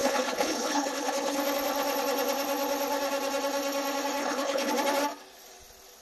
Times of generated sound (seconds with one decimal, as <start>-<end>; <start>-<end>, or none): 0.0-1.4; 4.2-4.7